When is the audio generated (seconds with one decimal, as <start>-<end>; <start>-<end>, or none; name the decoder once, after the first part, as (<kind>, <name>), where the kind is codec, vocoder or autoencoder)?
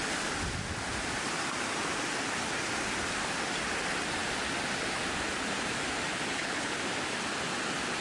6.1-6.8 (codec, HILCodec)